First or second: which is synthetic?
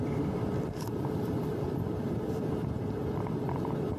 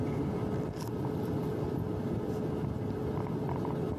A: first